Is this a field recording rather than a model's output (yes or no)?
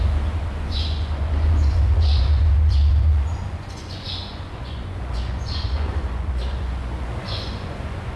no